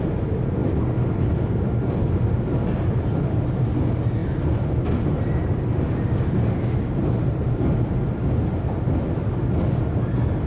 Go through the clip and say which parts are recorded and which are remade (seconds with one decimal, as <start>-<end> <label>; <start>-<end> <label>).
0.0-10.5 recorded